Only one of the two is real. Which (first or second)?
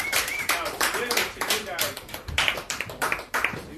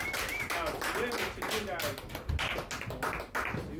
second